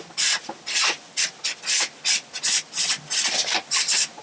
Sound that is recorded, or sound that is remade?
recorded